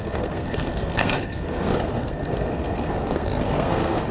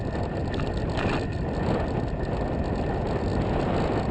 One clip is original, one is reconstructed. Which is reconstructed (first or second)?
first